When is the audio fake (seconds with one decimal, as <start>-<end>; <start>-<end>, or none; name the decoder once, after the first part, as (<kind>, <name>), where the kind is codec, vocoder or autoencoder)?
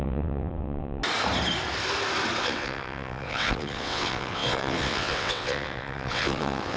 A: 0.0-1.0 (vocoder, WaveNeXt); 2.4-6.8